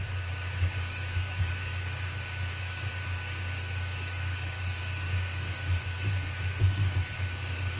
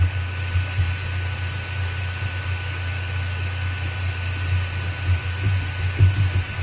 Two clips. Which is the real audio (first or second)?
second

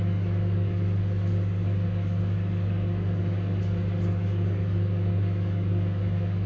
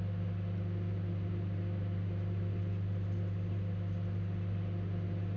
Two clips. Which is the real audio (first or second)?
second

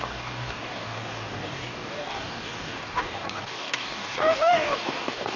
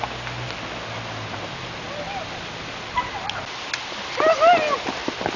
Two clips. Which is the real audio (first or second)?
second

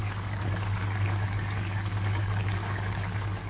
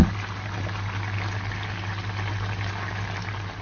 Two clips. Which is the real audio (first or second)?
second